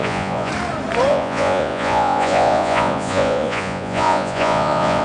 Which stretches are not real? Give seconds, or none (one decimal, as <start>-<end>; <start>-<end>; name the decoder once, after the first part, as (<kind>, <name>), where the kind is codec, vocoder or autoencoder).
0.0-0.5 (vocoder, Vocos); 1.1-5.0